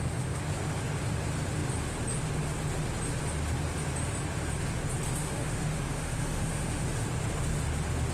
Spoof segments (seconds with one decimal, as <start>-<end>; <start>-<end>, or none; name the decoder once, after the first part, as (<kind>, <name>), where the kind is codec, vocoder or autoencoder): 5.2-7.1 (autoencoder, DAC-VAE)

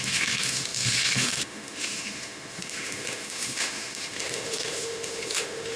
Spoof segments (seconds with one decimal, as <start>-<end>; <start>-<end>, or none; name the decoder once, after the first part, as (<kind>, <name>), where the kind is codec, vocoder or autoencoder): 0.0-5.8 (autoencoder, DAC-VAE)

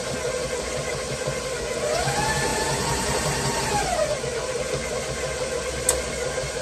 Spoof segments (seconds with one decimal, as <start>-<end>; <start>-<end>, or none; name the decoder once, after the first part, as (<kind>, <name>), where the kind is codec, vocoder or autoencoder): 2.5-4.2 (vocoder, BigVGAN v2)

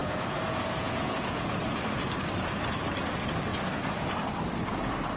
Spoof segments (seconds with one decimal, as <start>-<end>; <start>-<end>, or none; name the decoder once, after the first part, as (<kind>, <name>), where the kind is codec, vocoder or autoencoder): 0.0-1.5 (vocoder, Vocos); 3.5-4.0

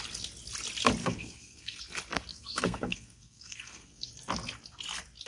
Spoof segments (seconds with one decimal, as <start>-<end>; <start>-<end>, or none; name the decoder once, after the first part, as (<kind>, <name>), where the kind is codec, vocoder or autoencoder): 1.0-1.8 (codec, SNAC); 2.3-4.1

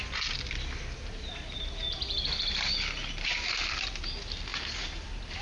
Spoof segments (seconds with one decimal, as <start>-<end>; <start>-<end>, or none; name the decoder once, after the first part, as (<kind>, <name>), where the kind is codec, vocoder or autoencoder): none